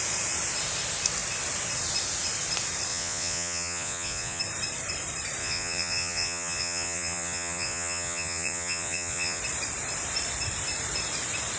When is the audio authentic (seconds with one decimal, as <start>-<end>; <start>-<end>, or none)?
0.0-2.9; 4.4-5.4; 9.4-11.6